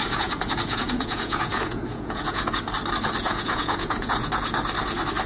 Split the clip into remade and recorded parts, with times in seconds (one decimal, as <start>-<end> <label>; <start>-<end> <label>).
0.0-2.6 remade; 2.6-3.2 recorded; 3.2-4.3 remade; 4.3-5.3 recorded